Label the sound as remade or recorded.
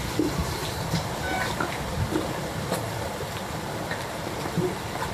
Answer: remade